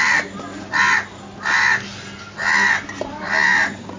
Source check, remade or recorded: recorded